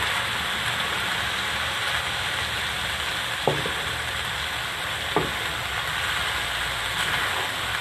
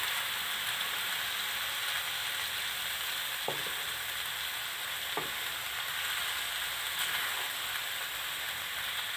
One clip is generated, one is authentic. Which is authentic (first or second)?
second